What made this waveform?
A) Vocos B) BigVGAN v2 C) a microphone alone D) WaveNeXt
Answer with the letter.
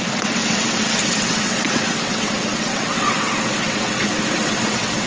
D